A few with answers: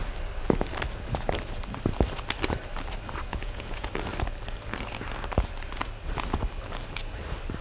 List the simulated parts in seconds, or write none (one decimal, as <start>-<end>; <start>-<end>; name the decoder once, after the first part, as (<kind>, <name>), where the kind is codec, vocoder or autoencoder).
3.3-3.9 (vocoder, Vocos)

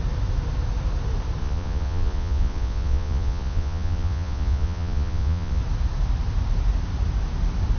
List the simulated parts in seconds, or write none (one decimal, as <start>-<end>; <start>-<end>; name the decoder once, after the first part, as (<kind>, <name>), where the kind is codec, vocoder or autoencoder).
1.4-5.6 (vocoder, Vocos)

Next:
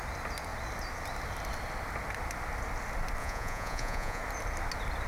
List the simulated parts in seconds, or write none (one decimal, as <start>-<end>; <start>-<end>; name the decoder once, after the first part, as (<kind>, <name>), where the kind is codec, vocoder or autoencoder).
3.2-4.2 (vocoder, Vocos)

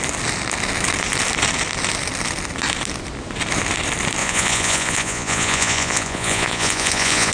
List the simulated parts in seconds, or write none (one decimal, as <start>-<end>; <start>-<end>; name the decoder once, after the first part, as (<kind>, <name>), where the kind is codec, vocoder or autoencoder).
4.2-7.3 (vocoder, Vocos)